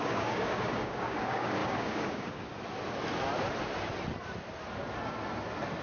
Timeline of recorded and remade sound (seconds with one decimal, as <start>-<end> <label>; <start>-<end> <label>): 0.0-2.5 remade; 2.5-5.8 recorded